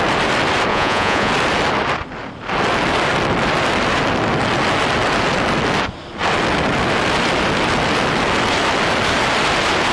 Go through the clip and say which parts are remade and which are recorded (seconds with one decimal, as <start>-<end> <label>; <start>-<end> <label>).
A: 0.0-0.7 recorded; 0.7-1.3 remade; 1.3-9.9 recorded